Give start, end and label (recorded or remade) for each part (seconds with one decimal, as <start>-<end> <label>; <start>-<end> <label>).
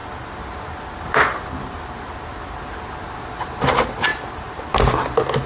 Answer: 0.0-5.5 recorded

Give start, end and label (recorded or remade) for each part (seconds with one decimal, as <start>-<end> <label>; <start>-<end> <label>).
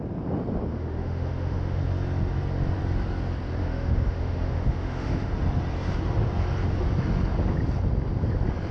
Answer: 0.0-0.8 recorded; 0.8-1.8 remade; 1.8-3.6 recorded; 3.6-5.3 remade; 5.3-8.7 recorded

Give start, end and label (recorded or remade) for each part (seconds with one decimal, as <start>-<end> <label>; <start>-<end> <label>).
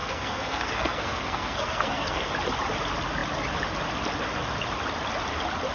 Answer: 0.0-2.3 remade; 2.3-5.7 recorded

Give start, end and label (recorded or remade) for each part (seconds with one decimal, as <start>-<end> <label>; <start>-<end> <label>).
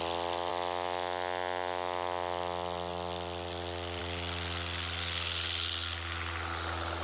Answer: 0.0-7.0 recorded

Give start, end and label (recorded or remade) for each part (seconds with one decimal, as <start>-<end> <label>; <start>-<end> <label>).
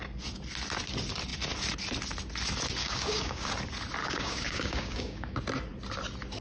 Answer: 0.0-2.8 recorded; 2.8-3.5 remade; 3.5-4.0 recorded; 4.0-5.4 remade; 5.4-6.4 recorded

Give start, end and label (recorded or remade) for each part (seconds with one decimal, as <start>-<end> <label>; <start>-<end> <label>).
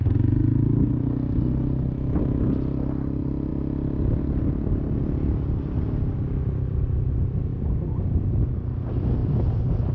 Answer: 0.0-9.9 recorded